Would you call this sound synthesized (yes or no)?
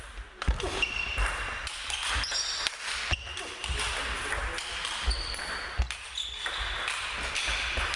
no